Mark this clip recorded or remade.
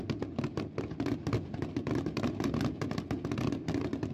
recorded